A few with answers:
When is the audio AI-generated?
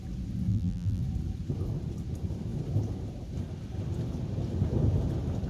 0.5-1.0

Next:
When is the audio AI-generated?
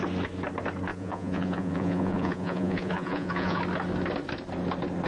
0.9-3.6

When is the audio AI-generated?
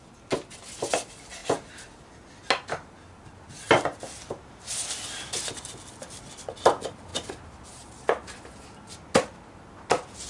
none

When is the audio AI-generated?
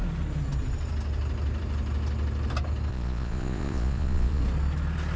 2.9-4.4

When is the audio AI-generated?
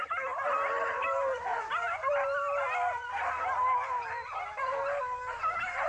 1.5-2.1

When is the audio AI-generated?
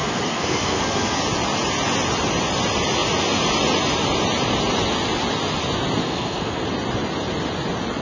0.0-1.2; 6.0-6.6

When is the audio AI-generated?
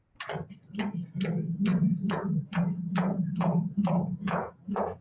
1.7-5.0